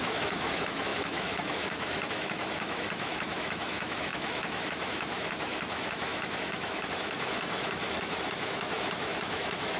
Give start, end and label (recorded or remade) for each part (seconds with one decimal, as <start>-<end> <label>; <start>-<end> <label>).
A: 0.0-9.8 remade